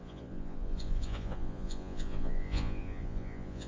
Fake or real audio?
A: fake